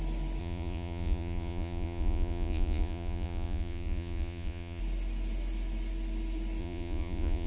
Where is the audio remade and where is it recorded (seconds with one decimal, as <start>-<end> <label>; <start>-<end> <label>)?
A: 0.0-0.4 recorded; 0.4-4.8 remade; 4.8-6.6 recorded; 6.6-7.5 remade